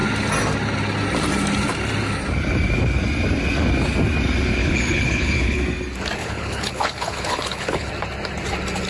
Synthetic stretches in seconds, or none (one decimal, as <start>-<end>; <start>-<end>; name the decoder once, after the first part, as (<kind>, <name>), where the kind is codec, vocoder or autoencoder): 4.6-5.6 (codec, HILCodec); 6.2-7.9